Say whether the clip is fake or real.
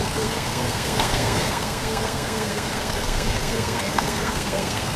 fake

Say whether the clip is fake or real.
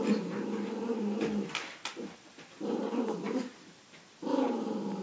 real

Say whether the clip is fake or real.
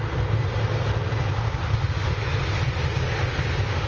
real